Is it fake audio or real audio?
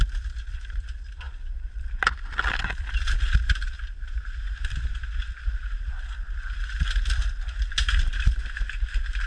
real